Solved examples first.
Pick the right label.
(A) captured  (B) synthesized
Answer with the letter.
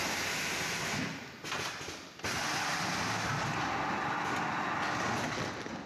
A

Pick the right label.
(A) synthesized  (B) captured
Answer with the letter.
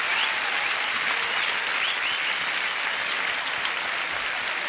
B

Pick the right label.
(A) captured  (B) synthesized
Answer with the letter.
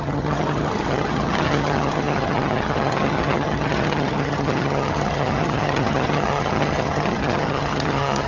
B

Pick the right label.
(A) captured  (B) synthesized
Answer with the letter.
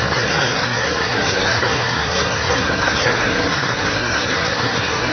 B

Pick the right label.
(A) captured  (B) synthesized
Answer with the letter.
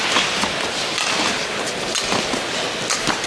A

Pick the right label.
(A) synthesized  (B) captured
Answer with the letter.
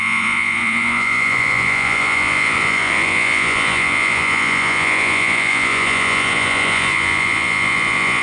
A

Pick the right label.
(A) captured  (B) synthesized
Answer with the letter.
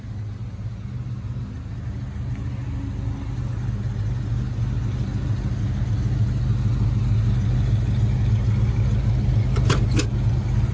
A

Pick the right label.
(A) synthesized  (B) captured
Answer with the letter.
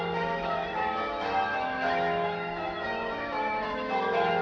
A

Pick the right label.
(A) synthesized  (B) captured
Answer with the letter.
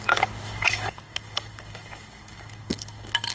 A